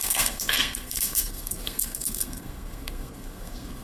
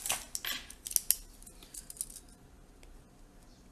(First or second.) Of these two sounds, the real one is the second